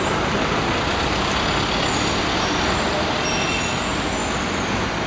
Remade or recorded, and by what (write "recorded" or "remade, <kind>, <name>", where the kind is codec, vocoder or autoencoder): recorded